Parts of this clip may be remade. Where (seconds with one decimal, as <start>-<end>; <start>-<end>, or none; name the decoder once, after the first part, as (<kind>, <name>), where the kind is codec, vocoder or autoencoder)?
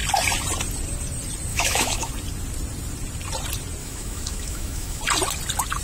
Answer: 1.5-2.1 (autoencoder, DAC-VAE); 3.8-5.0